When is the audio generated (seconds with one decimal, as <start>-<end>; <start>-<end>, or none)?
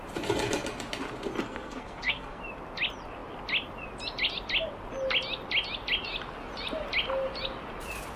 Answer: 1.4-2.4